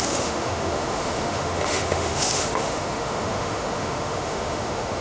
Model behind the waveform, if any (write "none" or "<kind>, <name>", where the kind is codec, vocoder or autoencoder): autoencoder, DAC-VAE